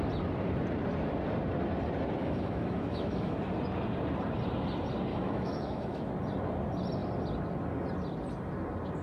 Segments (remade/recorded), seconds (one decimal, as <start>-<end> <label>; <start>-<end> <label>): 0.0-2.2 recorded; 2.2-3.4 remade; 3.4-5.1 recorded; 5.1-6.1 remade; 6.1-9.0 recorded